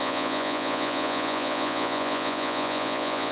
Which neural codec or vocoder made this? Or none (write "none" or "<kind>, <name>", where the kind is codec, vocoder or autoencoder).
vocoder, Vocos